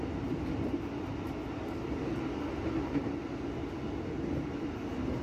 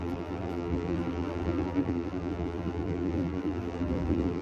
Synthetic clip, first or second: second